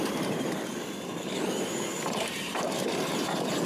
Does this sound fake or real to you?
fake